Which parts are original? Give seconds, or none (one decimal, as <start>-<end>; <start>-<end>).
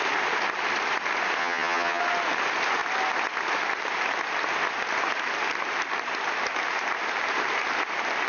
0.0-1.4; 2.0-8.3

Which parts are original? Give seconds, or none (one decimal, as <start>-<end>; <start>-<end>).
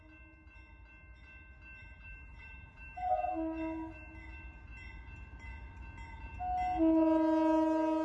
0.0-1.8; 3.3-8.0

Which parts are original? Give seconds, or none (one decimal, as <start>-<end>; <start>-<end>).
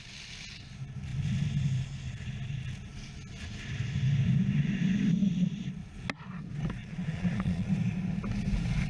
0.0-6.8; 7.7-8.9